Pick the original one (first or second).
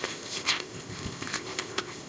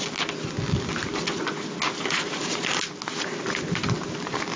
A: second